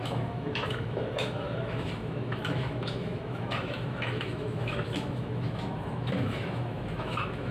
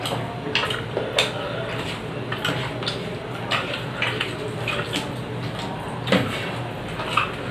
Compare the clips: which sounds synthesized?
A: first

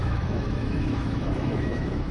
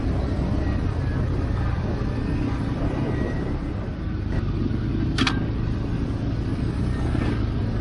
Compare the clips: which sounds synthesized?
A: first